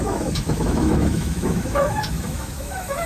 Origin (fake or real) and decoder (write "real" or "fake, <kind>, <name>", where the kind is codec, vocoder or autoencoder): fake, autoencoder, DAC-VAE